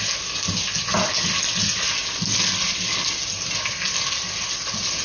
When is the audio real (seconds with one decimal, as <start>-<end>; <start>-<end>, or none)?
0.0-5.0